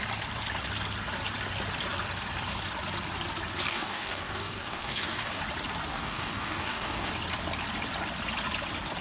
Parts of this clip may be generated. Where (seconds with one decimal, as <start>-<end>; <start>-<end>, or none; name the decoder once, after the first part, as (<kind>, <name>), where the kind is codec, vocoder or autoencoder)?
3.7-5.4 (codec, DAC); 5.9-7.1

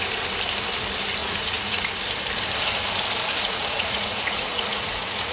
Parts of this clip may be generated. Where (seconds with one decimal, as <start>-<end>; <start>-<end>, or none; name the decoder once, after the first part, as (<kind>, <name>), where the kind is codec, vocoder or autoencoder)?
1.2-1.9 (vocoder, Vocos); 3.2-5.3

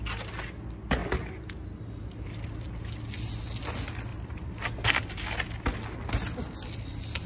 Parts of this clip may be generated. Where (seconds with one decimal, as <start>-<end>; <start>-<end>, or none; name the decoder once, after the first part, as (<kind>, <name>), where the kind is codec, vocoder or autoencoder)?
4.1-4.7 (vocoder, BigVGAN v2)

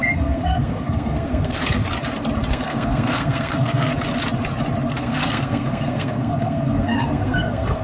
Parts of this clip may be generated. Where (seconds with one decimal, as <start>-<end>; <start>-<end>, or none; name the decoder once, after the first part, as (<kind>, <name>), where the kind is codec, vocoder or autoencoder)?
0.0-1.8 (codec, SNAC); 2.5-3.9; 4.9-7.8

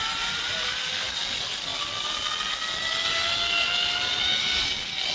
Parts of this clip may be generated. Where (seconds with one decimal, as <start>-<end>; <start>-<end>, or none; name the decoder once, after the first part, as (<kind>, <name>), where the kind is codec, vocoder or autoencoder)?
none